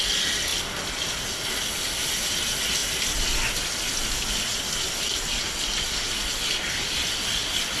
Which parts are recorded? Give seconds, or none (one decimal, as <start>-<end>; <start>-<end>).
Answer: 0.0-7.8